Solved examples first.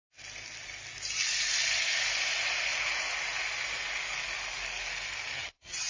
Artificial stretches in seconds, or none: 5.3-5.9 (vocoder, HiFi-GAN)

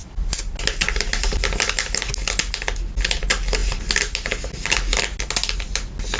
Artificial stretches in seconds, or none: none